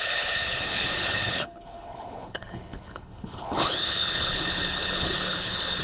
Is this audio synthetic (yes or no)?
yes